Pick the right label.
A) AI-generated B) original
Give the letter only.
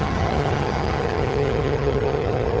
A